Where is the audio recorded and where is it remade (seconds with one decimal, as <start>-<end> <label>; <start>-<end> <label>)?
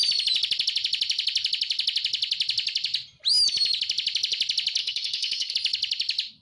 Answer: 0.0-4.8 recorded; 4.8-5.5 remade; 5.5-6.4 recorded